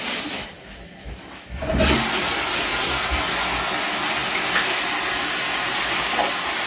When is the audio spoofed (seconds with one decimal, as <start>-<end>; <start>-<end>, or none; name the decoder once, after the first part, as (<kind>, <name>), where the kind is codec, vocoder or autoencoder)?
none